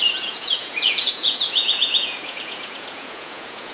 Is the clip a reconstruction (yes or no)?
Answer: yes